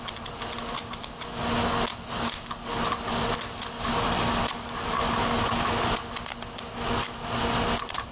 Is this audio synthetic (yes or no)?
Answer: no